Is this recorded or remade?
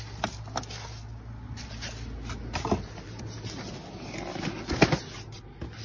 recorded